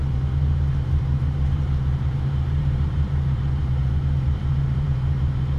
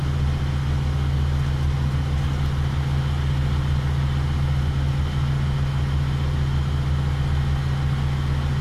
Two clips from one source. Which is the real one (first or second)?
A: second